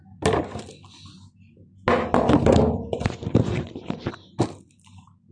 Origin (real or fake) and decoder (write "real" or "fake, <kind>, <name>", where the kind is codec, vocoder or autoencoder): real